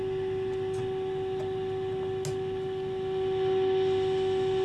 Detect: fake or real real